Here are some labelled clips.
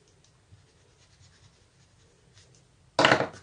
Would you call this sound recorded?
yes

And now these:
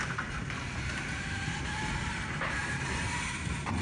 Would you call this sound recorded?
no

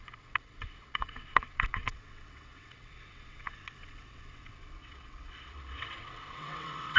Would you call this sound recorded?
no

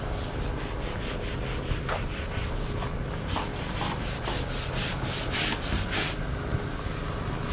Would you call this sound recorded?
yes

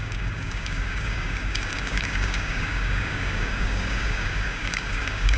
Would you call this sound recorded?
no